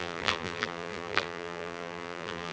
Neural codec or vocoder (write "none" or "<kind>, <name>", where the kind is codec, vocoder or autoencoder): vocoder, BigVGAN v2